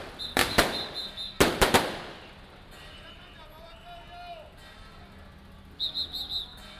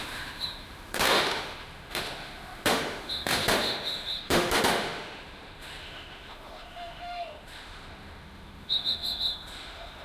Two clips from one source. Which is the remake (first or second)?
second